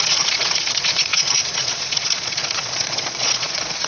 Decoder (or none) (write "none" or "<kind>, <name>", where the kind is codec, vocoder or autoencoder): vocoder, Vocos